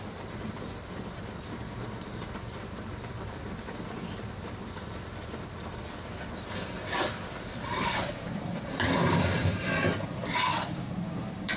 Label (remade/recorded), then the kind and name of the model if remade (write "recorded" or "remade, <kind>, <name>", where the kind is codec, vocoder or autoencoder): remade, vocoder, BigVGAN v2